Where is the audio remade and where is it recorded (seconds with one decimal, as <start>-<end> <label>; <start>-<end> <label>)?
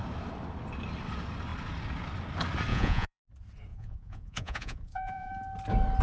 0.0-2.7 recorded; 2.7-3.2 remade; 3.2-3.7 recorded; 3.7-5.3 remade; 5.3-6.0 recorded